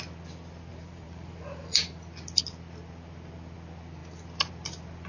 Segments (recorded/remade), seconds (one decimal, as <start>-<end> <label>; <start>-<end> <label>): 0.0-0.7 recorded; 0.7-1.9 remade; 1.9-5.1 recorded